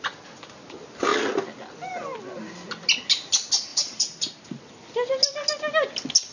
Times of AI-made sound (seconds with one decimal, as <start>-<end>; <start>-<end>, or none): 3.7-4.7